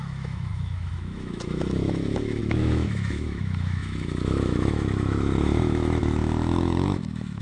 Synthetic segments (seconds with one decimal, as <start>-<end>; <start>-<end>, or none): 0.0-7.4